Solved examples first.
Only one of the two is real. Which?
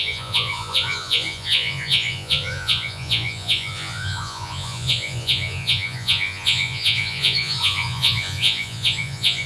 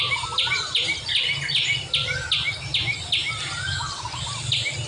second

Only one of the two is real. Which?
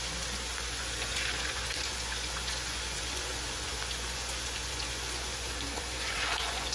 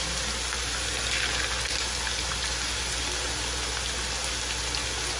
second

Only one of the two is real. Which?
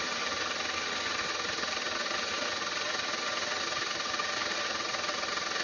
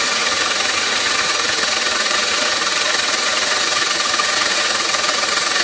first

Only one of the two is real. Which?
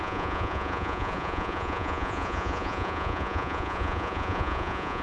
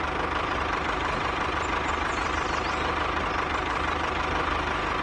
second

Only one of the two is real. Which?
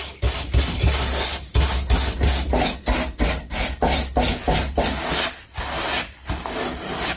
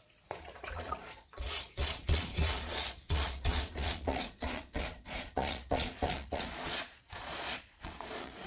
first